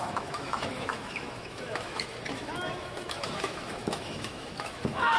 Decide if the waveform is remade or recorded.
remade